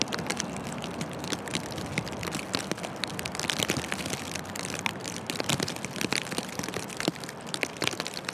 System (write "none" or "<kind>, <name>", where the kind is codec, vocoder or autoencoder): vocoder, BigVGAN v2